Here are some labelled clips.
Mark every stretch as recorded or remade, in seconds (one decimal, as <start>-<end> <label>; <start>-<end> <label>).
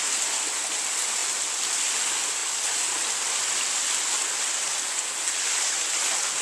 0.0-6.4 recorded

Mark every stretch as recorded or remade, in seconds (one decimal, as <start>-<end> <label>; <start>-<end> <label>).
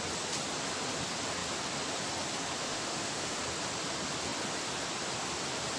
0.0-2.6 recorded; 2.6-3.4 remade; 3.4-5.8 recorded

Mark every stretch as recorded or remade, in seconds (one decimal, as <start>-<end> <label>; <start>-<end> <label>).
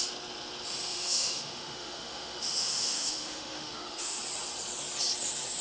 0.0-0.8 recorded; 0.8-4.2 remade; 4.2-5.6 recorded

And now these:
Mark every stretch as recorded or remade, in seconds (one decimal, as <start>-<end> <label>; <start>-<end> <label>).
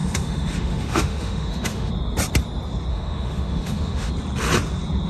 0.0-1.9 remade; 1.9-2.9 recorded; 2.9-4.1 remade; 4.1-5.1 recorded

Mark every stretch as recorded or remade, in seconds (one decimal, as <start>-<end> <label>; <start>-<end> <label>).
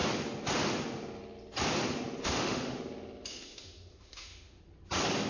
0.0-2.2 recorded; 2.2-2.8 remade; 2.8-3.3 recorded; 3.3-4.6 remade; 4.6-5.3 recorded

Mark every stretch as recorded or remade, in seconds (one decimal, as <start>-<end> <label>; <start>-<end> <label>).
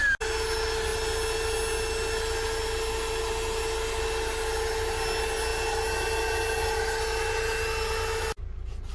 0.0-8.9 recorded